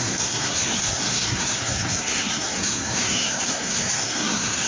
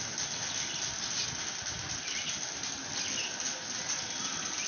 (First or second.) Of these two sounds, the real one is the second